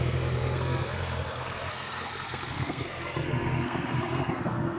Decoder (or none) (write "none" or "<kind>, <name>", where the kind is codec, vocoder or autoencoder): codec, SNAC